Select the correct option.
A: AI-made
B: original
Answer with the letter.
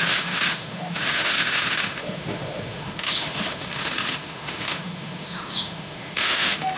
A